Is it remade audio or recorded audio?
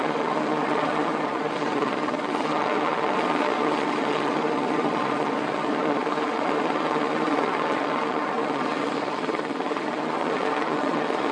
remade